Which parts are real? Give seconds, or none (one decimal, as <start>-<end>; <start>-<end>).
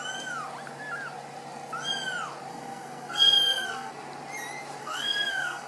0.0-2.5; 3.9-4.8